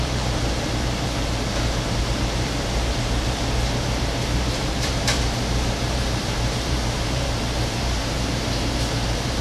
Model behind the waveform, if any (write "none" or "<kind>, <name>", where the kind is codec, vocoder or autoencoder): vocoder, BigVGAN v2